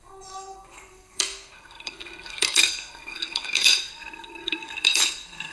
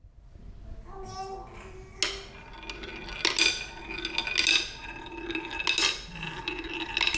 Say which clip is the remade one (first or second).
first